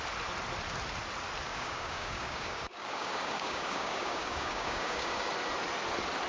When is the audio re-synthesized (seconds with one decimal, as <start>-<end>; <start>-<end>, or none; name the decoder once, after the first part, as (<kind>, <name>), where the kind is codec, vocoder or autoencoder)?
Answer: 1.5-5.3 (codec, DAC)